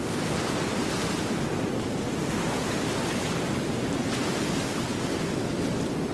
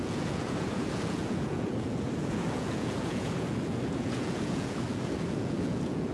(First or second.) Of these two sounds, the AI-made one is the second